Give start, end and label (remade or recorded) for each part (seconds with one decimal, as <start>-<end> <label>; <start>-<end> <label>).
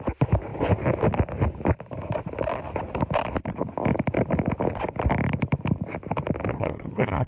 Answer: 0.0-6.5 recorded; 6.5-7.3 remade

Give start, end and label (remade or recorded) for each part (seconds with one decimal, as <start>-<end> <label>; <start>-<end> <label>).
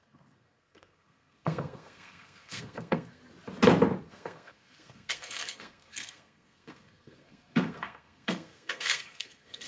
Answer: 0.0-3.2 remade; 3.2-4.0 recorded; 4.0-9.7 remade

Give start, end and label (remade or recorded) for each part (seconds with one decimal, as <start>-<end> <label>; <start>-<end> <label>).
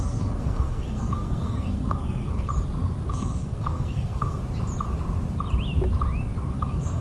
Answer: 0.0-2.5 remade; 2.5-3.1 recorded; 3.1-4.4 remade; 4.4-6.5 recorded; 6.5-7.0 remade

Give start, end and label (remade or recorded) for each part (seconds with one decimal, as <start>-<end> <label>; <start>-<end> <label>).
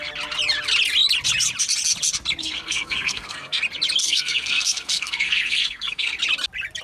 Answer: 0.0-2.4 recorded; 2.4-3.6 remade; 3.6-4.0 recorded; 4.0-6.2 remade; 6.2-6.8 recorded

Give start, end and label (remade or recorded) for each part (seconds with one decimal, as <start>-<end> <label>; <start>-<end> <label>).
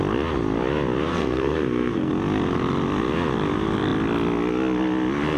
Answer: 0.0-1.1 recorded; 1.1-2.1 remade; 2.1-5.4 recorded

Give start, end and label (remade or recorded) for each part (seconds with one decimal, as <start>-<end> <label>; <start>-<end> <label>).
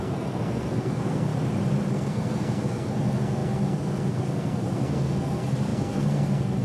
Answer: 0.0-1.3 remade; 1.3-1.9 recorded; 1.9-6.6 remade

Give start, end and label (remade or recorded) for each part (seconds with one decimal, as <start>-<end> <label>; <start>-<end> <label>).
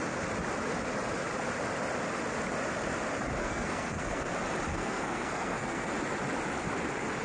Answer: 0.0-3.4 recorded; 3.4-4.3 remade; 4.3-4.7 recorded; 4.7-5.9 remade; 5.9-7.2 recorded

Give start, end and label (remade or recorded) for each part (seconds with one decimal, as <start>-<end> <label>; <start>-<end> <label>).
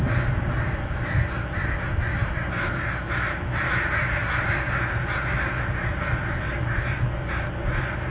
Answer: 0.0-8.1 recorded